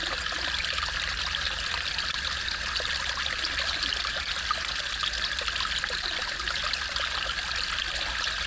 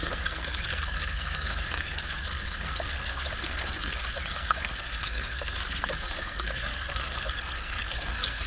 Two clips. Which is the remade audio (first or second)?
second